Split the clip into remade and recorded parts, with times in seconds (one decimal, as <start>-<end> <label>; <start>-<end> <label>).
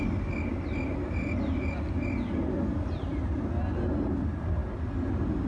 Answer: 0.0-5.5 recorded